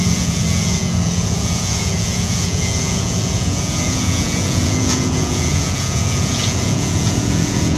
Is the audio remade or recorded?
remade